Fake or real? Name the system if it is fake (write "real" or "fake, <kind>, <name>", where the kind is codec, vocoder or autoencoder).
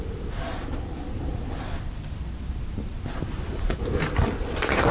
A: fake, vocoder, BigVGAN v2